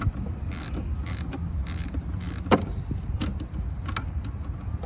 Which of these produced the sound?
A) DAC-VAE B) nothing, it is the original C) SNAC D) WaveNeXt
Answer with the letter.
B